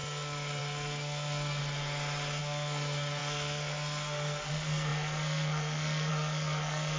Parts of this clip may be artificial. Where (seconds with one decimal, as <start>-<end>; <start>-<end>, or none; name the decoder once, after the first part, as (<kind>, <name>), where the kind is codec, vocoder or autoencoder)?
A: 0.0-1.6 (codec, SNAC); 2.4-7.0